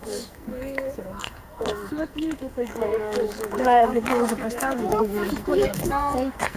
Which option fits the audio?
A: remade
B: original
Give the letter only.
A